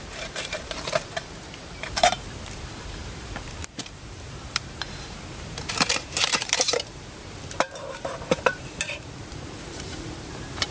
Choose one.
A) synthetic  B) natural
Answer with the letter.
A